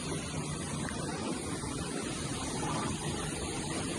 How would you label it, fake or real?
real